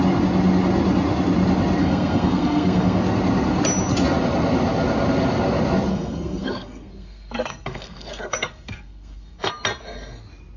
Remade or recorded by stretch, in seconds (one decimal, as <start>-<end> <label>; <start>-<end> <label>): 0.0-1.8 recorded; 1.8-3.0 remade; 3.0-5.9 recorded; 5.9-9.5 remade; 9.5-10.6 recorded